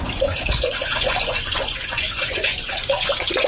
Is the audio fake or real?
fake